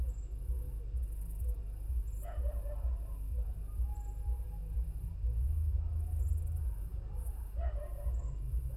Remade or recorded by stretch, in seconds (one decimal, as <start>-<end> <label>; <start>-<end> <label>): 0.0-6.9 recorded; 6.9-7.7 remade; 7.7-8.8 recorded